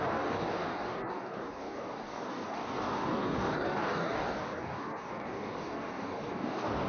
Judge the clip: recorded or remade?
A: remade